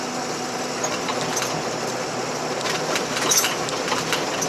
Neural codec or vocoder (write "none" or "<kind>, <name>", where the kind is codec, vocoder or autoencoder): none